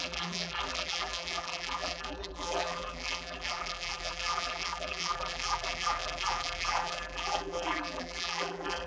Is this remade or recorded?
remade